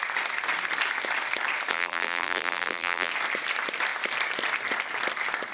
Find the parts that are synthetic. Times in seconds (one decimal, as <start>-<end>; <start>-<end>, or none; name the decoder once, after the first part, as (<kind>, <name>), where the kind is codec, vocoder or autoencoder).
1.7-3.1 (vocoder, BigVGAN v2)